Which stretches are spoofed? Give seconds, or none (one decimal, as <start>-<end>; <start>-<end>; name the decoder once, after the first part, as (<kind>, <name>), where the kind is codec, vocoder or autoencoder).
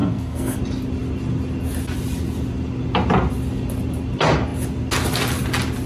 0.0-0.6 (codec, SNAC)